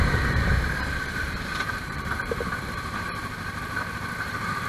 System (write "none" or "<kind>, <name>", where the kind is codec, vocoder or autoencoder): vocoder, BigVGAN v2